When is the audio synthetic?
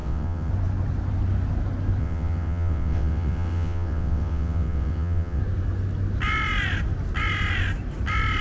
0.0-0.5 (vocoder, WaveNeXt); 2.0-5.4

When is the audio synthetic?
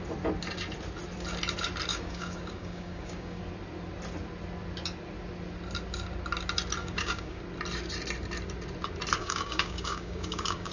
1.9-3.4 (codec, DAC); 6.8-7.4; 9.2-10.7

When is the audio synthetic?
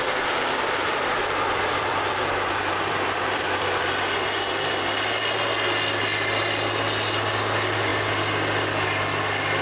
0.8-3.8 (vocoder, BigVGAN v2)